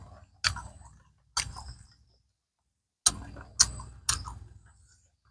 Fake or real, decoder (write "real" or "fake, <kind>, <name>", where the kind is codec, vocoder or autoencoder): real